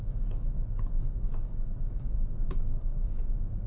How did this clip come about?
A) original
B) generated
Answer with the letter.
B